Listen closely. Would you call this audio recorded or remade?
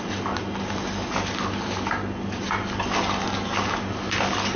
recorded